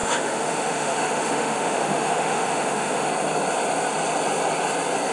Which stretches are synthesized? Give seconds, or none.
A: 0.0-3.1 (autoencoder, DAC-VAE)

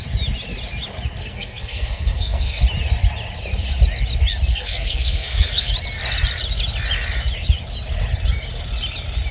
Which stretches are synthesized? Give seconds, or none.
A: 1.2-2.6 (codec, SNAC); 4.5-5.7

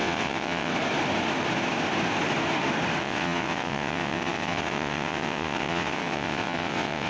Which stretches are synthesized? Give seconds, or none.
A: 0.0-0.7 (vocoder, WaveNeXt); 3.0-7.1

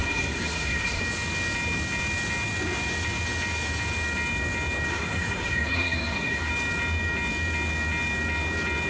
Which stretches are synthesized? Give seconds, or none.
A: 0.0-1.0 (codec, SNAC); 4.9-6.5

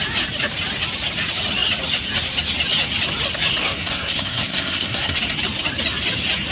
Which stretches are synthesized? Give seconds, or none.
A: 3.6-5.2 (codec, SNAC)

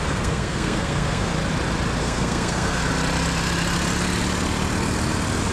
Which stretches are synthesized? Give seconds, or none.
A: 0.0-1.3 (codec, SNAC); 2.0-2.8